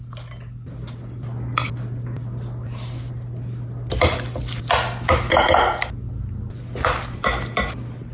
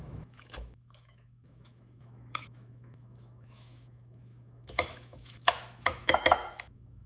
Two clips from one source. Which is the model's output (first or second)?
second